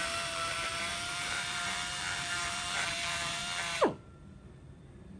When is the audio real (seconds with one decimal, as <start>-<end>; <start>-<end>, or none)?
3.4-5.2